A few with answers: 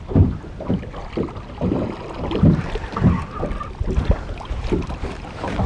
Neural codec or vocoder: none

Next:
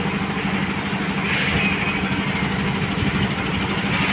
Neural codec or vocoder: none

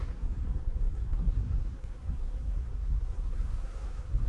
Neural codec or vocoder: codec, SNAC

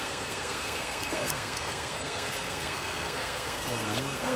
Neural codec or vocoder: codec, SNAC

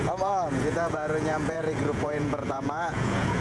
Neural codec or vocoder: vocoder, Vocos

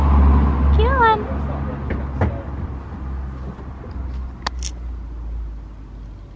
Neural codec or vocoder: none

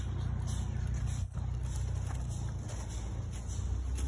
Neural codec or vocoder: none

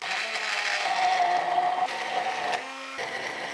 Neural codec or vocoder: none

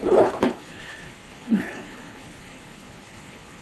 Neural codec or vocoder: codec, HILCodec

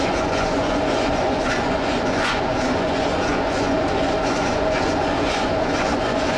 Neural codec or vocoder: vocoder, Vocos